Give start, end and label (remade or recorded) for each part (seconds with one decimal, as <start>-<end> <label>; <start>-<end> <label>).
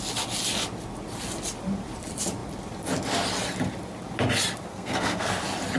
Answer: 0.0-4.7 recorded; 4.7-5.3 remade; 5.3-5.8 recorded